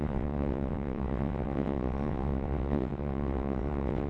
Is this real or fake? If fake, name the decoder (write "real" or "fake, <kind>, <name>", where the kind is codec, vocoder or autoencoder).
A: fake, vocoder, WaveNeXt